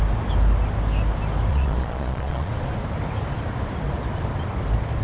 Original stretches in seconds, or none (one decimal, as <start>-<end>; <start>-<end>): 0.0-1.5; 2.5-5.0